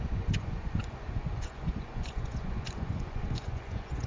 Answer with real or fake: fake